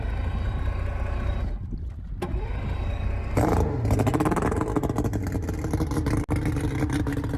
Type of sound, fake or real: real